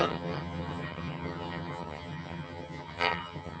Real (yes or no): no